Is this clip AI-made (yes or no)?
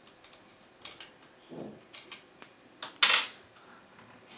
no